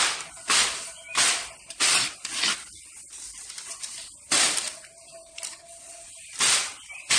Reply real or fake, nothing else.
fake